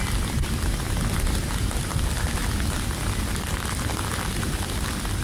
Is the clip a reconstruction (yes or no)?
no